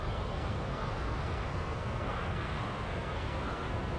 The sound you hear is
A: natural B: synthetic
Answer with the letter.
B